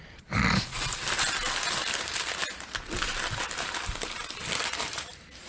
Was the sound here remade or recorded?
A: recorded